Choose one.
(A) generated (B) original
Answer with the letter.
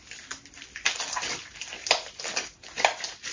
B